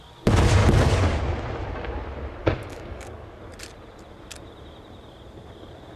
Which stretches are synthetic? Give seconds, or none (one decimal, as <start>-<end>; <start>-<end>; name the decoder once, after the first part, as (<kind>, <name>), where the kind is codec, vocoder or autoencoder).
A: 0.6-1.2 (codec, DAC); 2.4-3.4